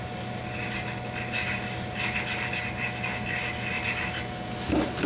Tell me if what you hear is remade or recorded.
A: recorded